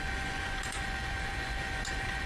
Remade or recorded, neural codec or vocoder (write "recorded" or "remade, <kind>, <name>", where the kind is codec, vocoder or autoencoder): remade, vocoder, Vocos